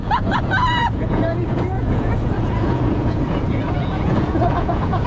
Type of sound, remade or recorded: remade